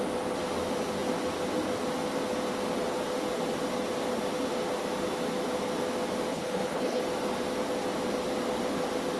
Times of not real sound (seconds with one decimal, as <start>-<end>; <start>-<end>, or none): 6.3-7.0